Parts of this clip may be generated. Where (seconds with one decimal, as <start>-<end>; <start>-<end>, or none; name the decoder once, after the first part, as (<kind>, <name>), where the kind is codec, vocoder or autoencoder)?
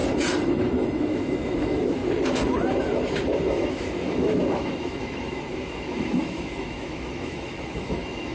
1.0-2.0 (autoencoder, DAC-VAE); 3.5-8.3